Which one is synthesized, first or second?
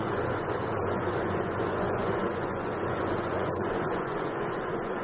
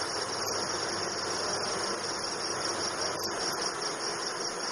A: first